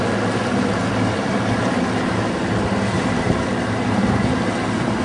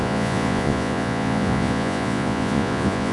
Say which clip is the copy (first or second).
second